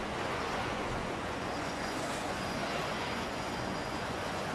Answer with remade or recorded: remade